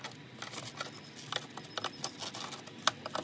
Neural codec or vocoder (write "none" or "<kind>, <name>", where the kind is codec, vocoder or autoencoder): none